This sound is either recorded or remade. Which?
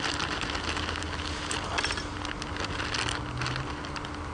recorded